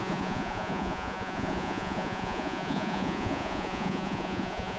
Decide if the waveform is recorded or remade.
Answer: remade